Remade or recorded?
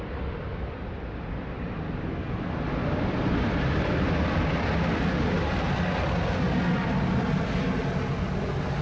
recorded